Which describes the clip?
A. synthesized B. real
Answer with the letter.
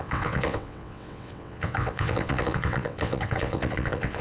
A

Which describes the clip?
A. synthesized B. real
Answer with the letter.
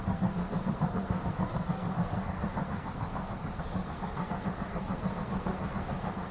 A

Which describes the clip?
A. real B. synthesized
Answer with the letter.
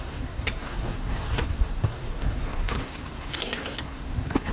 B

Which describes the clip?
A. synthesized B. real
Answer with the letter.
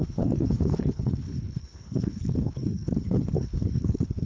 A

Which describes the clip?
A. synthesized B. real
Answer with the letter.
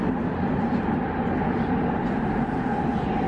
B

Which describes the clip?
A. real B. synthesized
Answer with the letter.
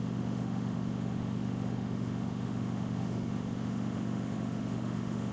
B